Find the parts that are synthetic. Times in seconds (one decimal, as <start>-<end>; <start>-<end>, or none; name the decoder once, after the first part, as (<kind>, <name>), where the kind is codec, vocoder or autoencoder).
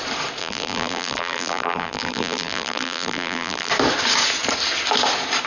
0.4-3.7 (vocoder, BigVGAN v2)